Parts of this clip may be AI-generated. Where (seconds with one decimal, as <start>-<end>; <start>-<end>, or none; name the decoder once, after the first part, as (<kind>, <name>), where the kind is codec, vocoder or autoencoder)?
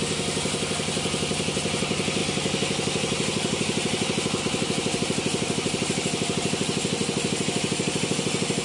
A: none